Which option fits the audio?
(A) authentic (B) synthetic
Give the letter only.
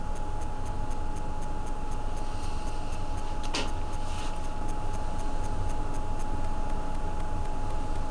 A